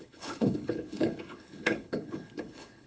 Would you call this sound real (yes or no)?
no